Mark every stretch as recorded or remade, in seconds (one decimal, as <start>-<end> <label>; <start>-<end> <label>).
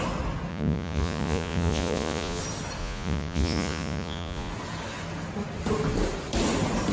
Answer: 0.0-0.5 recorded; 0.5-2.4 remade; 2.4-2.8 recorded; 2.8-4.5 remade; 4.5-6.9 recorded